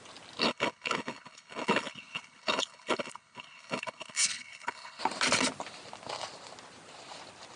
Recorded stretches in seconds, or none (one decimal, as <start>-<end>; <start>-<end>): 0.0-0.4; 5.0-7.6